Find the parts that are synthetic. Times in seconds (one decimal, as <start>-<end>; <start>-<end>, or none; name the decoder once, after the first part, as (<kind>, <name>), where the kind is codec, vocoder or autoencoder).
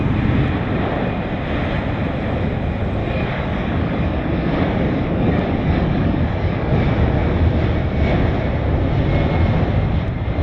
3.0-6.8 (codec, DAC)